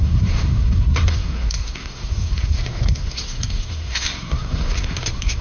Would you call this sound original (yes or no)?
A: no